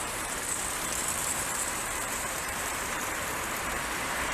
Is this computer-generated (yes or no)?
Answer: yes